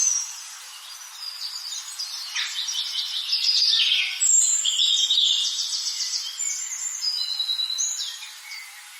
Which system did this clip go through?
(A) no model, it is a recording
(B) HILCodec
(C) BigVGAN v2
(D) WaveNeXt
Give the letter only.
A